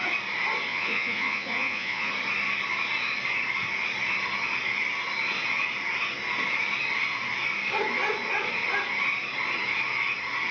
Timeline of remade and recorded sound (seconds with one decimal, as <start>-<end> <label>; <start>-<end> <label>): 0.0-0.7 recorded; 0.7-2.1 remade; 2.1-10.5 recorded